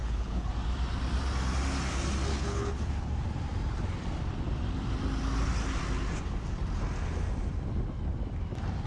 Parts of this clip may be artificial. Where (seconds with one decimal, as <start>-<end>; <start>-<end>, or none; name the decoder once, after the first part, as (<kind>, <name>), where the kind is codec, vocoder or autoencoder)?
0.0-0.5 (codec, HILCodec); 2.3-2.9